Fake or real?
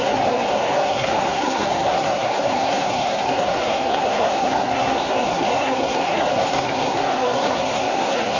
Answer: fake